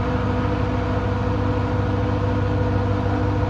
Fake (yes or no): no